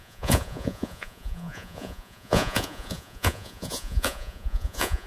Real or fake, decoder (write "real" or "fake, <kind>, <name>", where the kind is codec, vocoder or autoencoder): fake, vocoder, Vocos